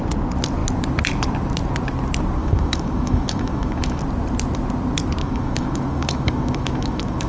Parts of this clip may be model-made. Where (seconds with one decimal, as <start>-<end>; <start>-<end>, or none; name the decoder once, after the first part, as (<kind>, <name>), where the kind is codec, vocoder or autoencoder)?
2.4-4.0 (autoencoder, DAC-VAE); 5.2-7.3